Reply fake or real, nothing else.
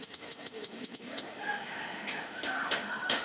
fake